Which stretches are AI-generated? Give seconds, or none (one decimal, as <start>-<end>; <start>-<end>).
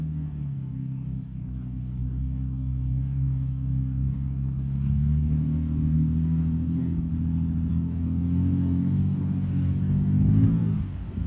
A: 0.0-7.1; 7.7-11.3